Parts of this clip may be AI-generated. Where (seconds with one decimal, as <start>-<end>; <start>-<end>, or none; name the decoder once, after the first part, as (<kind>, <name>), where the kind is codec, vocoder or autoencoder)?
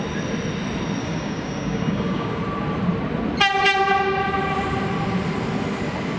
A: 1.0-2.4 (codec, DAC)